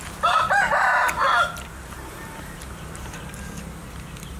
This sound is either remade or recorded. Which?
recorded